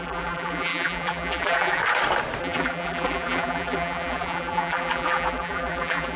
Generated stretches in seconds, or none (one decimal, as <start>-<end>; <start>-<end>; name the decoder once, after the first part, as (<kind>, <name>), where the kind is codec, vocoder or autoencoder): 0.0-1.8 (vocoder, BigVGAN v2); 2.4-6.2